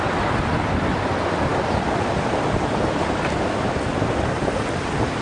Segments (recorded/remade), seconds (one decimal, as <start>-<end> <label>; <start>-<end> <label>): 0.0-5.2 recorded